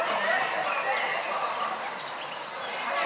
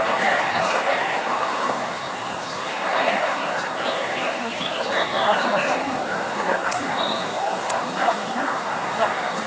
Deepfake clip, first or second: second